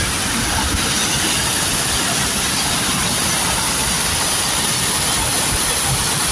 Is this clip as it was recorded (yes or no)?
yes